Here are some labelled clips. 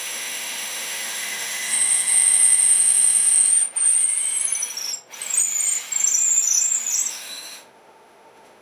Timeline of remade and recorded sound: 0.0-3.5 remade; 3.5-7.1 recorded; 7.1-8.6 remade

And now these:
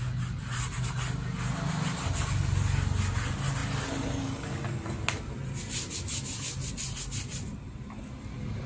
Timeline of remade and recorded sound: 0.0-8.7 recorded

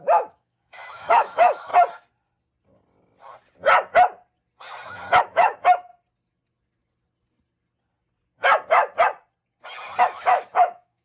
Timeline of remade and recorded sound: 0.0-1.7 remade; 1.7-5.2 recorded; 5.2-5.9 remade; 5.9-10.0 recorded; 10.0-11.0 remade

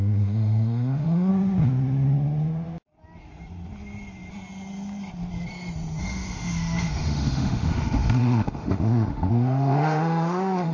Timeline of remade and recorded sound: 0.0-1.3 remade; 1.3-6.0 recorded; 6.0-10.7 remade

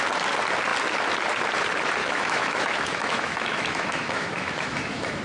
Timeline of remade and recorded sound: 0.0-2.0 recorded; 2.0-5.2 remade

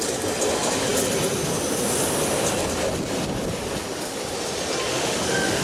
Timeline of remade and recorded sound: 0.0-4.9 recorded; 4.9-5.6 remade

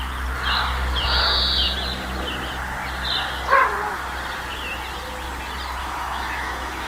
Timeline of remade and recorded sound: 0.0-5.8 recorded; 5.8-6.9 remade